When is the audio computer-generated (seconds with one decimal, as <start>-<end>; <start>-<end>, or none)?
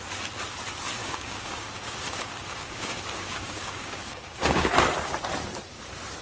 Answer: 1.0-4.7